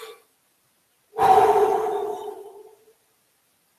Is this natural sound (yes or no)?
yes